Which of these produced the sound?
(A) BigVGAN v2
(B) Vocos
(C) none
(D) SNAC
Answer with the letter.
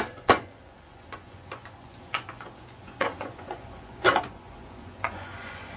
B